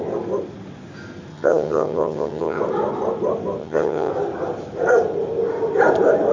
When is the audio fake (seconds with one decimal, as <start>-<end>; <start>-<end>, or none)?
1.3-2.6; 3.6-4.1